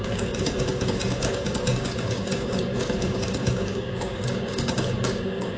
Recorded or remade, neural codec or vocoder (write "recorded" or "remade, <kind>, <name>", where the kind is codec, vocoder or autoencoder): remade, codec, DAC